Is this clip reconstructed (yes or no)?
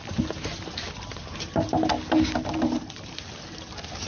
no